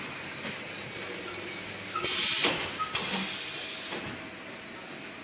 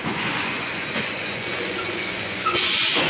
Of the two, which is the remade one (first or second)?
second